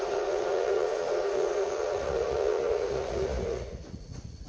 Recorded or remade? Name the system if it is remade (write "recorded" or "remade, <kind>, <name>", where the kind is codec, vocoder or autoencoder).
remade, vocoder, Vocos